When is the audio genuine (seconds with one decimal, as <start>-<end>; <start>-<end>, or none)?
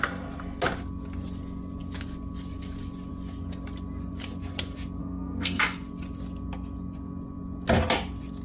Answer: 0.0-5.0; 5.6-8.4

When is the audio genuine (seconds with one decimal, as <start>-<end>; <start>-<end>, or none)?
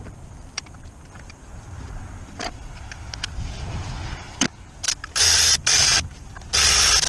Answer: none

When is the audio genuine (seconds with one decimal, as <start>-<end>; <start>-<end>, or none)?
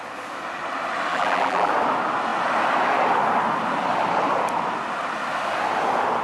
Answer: 0.0-1.1; 1.7-6.2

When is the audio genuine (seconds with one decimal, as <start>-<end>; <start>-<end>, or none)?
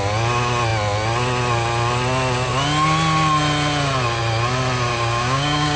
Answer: 0.0-4.9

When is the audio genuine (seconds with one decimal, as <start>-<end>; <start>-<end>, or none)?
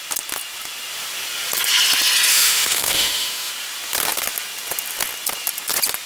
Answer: 0.0-2.3; 3.5-6.1